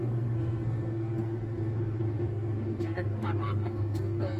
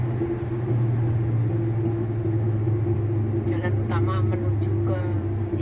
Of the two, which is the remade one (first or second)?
first